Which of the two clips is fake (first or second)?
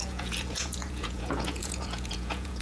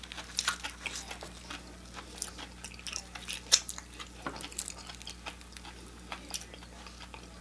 first